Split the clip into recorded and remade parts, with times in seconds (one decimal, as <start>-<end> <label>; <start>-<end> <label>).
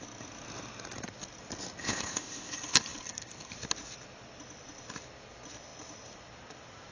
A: 0.0-1.8 recorded; 1.8-2.5 remade; 2.5-6.9 recorded